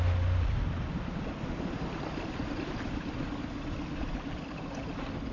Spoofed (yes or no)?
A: no